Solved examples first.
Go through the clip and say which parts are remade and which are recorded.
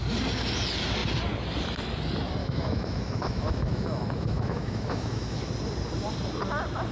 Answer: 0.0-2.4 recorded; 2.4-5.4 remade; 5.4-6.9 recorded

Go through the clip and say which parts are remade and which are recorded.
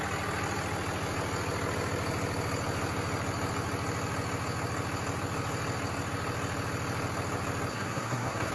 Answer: 0.0-7.7 recorded; 7.7-8.5 remade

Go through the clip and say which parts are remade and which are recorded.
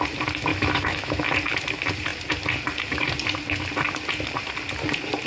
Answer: 0.0-0.5 recorded; 0.5-1.3 remade; 1.3-5.3 recorded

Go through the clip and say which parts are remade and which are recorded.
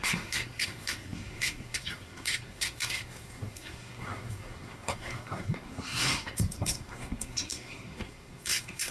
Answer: 0.0-8.9 remade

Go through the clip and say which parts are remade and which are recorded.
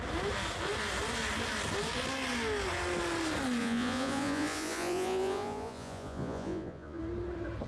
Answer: 0.0-3.6 recorded; 3.6-7.0 remade; 7.0-7.7 recorded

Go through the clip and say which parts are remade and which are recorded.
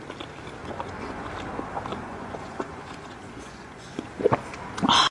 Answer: 0.0-0.6 recorded; 0.6-1.3 remade; 1.3-1.9 recorded; 1.9-4.0 remade; 4.0-5.1 recorded